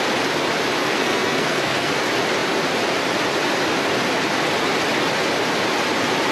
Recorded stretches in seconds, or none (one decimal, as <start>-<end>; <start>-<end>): 0.0-0.8; 1.9-6.3